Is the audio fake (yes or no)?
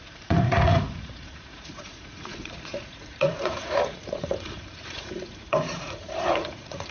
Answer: yes